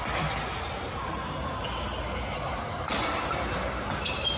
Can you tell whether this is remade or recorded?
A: recorded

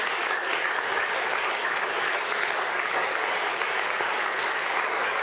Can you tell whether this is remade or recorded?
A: remade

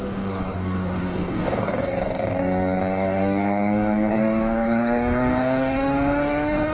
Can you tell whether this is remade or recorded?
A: remade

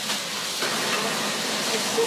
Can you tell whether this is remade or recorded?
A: recorded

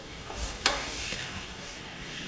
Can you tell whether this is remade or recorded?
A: remade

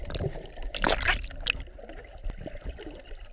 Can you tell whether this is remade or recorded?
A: recorded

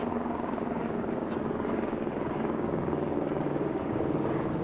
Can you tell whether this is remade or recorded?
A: remade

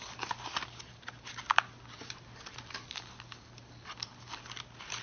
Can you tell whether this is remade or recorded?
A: recorded